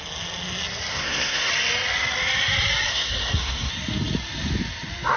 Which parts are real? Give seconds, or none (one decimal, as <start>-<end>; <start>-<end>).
0.0-0.9; 1.5-2.9; 3.7-5.2